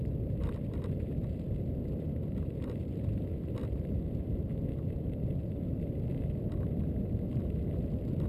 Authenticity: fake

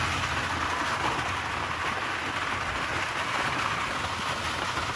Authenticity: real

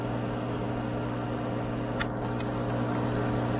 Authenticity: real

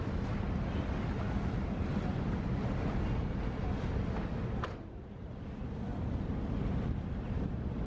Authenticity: real